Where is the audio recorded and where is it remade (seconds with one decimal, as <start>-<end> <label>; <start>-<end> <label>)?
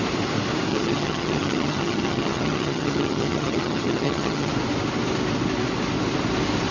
0.0-0.7 recorded; 0.7-4.5 remade; 4.5-6.7 recorded